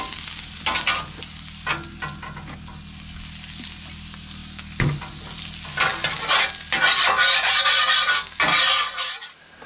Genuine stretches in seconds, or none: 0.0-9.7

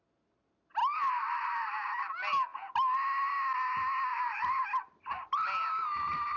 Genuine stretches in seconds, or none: 0.0-0.8; 1.4-4.1; 5.0-6.4

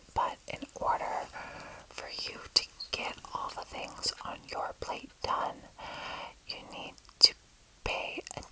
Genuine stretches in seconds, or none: 0.0-8.5

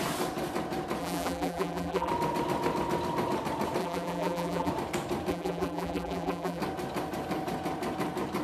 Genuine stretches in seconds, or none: 0.0-1.0; 2.1-3.8; 4.7-5.3; 6.6-8.4

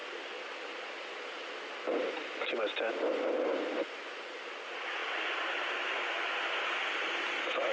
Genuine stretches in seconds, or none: 0.0-7.7

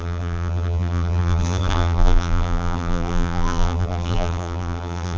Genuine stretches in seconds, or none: none